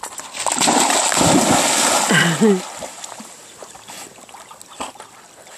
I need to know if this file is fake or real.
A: real